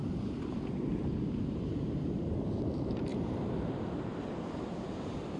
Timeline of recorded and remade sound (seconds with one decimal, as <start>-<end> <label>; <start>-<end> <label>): 0.0-5.4 remade

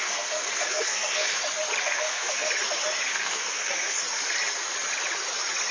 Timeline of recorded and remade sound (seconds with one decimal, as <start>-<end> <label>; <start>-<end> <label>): 0.0-1.4 remade; 1.4-1.8 recorded; 1.8-2.5 remade; 2.5-3.1 recorded; 3.1-4.0 remade; 4.0-5.7 recorded

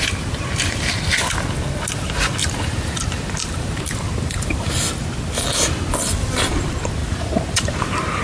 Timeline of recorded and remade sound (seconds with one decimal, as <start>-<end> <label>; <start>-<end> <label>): 0.0-2.4 recorded; 2.4-3.0 remade; 3.0-3.4 recorded; 3.4-4.7 remade; 4.7-7.0 recorded; 7.0-8.2 remade

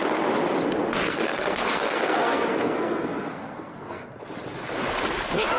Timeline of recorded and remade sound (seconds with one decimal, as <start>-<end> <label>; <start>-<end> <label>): 0.0-1.0 recorded; 1.0-4.1 remade; 4.1-5.6 recorded